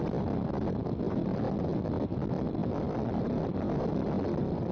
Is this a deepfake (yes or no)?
no